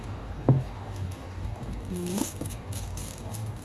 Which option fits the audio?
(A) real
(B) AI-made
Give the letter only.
B